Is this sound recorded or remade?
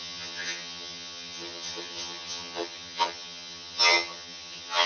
remade